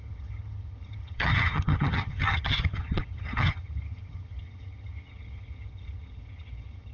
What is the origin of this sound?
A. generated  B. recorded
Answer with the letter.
A